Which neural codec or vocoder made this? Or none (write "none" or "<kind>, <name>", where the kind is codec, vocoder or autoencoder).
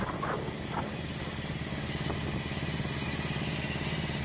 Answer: none